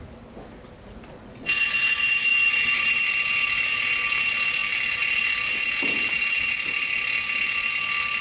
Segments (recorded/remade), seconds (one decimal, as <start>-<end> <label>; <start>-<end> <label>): 0.0-2.3 recorded; 2.3-3.1 remade; 3.1-8.2 recorded